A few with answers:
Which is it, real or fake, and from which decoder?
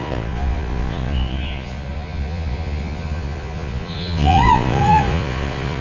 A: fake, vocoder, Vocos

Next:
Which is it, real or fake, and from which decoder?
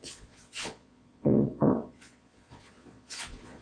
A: fake, vocoder, Vocos